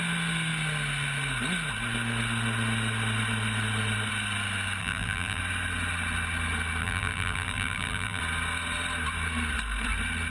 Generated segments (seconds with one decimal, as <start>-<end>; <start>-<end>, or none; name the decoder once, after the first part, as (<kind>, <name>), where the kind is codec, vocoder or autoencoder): 4.8-5.4 (vocoder, BigVGAN v2); 6.8-8.2